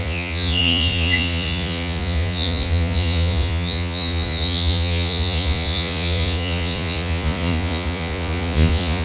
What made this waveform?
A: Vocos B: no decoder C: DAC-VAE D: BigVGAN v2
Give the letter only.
A